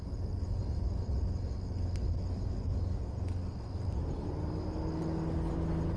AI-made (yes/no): no